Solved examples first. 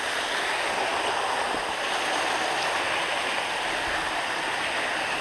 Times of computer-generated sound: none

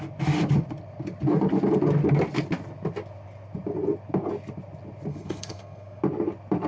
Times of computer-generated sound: 5.1-6.0

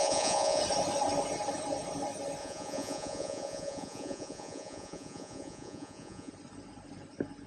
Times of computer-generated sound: 0.0-0.6; 2.4-6.3

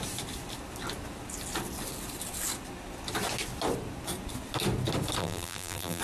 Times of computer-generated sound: 5.2-6.0

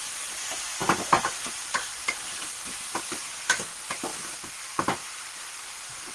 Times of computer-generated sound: 0.0-4.1; 4.6-6.1